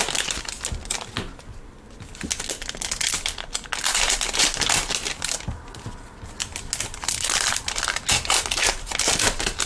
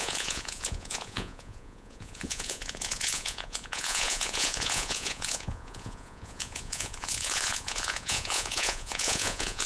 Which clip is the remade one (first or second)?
second